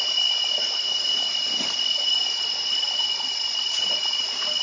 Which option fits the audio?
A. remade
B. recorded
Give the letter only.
B